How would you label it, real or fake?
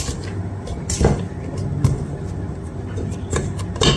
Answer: real